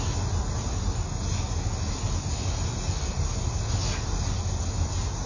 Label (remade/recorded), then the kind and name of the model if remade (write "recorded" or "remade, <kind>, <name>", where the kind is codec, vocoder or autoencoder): recorded